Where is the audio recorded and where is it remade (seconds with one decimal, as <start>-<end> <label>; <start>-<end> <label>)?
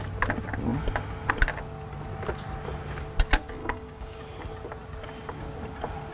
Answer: 0.0-3.6 recorded; 3.6-4.2 remade; 4.2-6.1 recorded